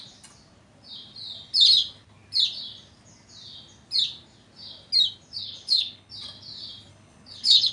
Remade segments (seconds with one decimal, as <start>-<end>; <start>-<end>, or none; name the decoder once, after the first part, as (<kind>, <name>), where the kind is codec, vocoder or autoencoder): 5.4-6.1 (codec, HILCodec); 6.9-7.7